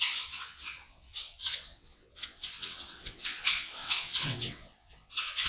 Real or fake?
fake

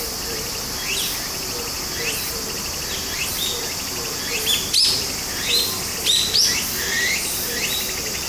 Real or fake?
real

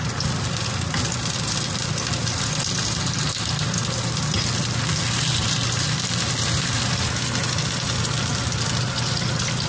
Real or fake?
fake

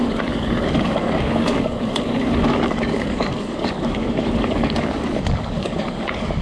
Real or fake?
fake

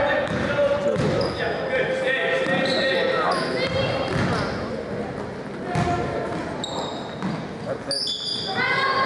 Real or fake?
real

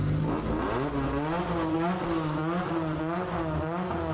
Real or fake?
real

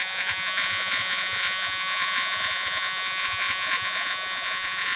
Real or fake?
fake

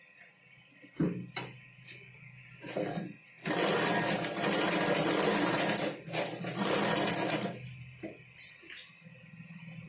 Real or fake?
real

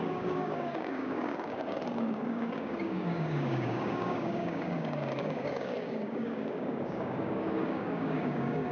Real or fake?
fake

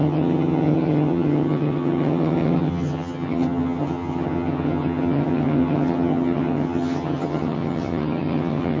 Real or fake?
fake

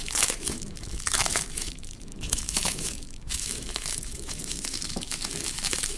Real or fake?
fake